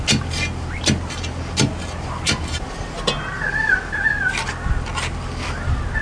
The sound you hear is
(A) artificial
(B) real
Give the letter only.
B